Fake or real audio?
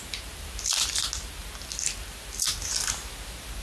real